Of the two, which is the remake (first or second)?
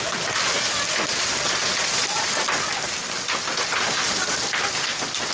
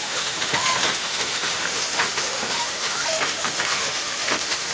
second